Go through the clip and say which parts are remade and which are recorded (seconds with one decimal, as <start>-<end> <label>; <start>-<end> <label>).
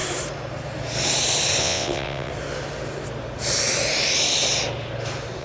0.0-1.6 recorded; 1.6-2.3 remade; 2.3-5.4 recorded